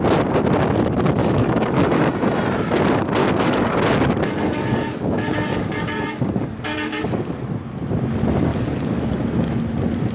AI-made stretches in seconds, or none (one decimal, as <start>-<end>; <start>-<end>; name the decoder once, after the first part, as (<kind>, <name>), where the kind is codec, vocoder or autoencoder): 1.2-2.1 (codec, DAC); 3.2-7.4; 8.5-9.2